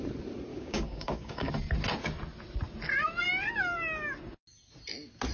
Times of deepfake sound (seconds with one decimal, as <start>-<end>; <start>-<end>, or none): 0.5-1.5